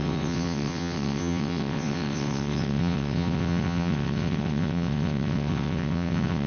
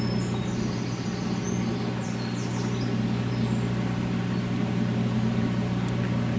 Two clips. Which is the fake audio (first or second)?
first